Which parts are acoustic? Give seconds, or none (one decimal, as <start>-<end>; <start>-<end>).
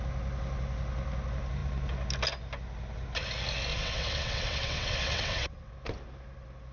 0.0-3.7; 5.7-6.7